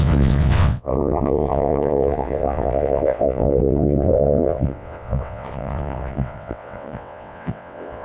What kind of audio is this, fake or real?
fake